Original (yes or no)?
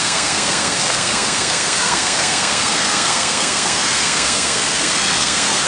no